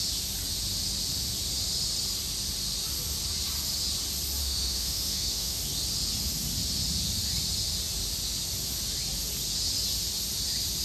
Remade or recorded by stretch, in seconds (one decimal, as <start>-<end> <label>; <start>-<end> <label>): 0.0-4.4 recorded; 4.4-5.6 remade; 5.6-10.8 recorded